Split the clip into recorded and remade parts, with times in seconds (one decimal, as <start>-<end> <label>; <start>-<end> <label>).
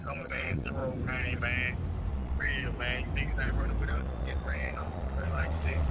0.0-0.8 remade; 0.8-2.1 recorded; 2.1-2.5 remade; 2.5-3.9 recorded; 3.9-5.9 remade